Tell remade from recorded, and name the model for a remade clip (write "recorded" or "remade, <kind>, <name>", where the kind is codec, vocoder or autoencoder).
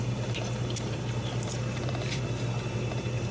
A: remade, vocoder, BigVGAN v2